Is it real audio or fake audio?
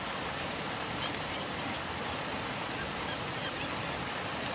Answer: fake